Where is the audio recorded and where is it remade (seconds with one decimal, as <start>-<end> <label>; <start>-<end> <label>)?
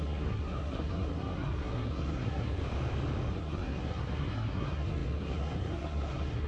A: 0.0-2.6 remade; 2.6-3.3 recorded; 3.3-6.5 remade